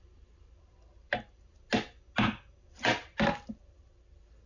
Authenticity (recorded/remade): recorded